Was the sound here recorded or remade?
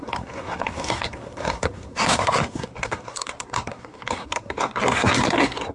remade